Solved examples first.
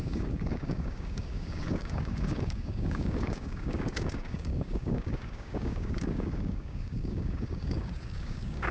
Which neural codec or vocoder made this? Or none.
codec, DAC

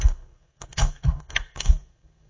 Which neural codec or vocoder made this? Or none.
codec, SNAC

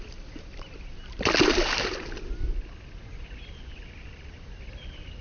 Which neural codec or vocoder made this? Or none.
none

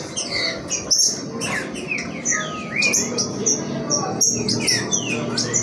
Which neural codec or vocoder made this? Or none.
none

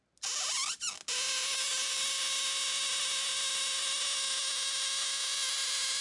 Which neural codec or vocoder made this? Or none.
none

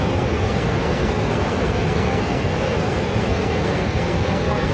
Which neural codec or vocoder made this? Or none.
codec, SNAC